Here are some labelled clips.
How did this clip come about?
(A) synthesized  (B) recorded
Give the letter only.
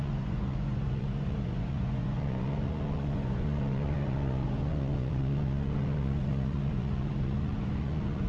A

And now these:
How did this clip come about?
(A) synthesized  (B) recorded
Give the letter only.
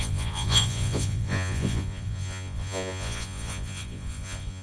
A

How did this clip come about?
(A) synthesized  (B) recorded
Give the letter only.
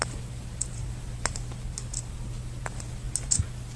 B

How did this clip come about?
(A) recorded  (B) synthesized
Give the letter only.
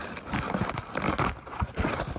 A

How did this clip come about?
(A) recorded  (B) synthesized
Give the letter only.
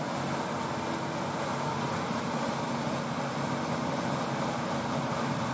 A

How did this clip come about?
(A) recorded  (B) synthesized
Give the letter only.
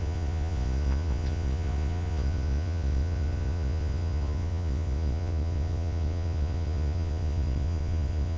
B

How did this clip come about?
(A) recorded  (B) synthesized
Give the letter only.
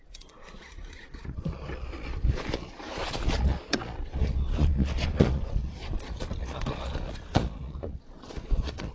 B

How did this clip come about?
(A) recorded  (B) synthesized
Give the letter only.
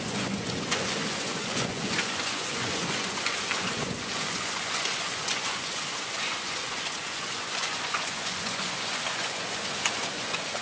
B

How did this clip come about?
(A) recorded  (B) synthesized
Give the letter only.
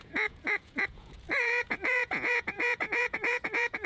B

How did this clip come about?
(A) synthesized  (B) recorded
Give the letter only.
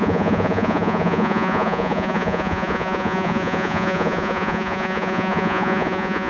A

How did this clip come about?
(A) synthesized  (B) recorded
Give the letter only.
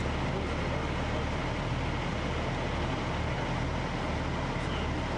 B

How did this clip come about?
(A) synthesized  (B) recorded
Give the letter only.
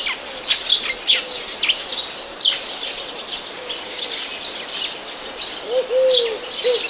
B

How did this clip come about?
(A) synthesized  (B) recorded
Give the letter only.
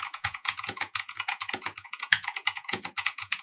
A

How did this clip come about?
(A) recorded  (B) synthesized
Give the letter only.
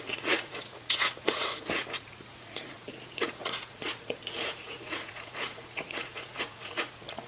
B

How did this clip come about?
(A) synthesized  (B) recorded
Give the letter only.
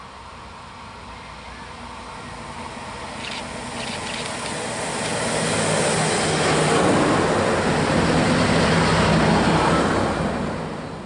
B